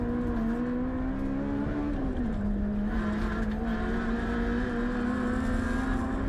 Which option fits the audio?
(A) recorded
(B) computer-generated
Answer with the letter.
A